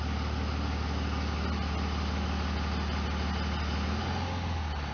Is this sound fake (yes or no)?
no